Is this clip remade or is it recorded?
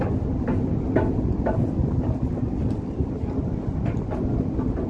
recorded